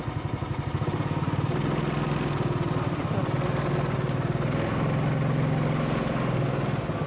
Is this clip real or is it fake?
real